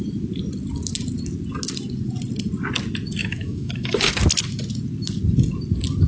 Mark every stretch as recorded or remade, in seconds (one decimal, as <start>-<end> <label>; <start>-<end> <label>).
0.0-3.2 recorded; 3.2-4.1 remade; 4.1-6.1 recorded